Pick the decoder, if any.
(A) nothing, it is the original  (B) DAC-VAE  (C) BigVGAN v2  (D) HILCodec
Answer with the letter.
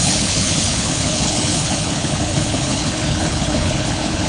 D